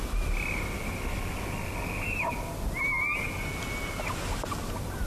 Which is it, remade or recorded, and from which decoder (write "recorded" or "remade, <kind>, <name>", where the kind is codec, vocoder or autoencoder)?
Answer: recorded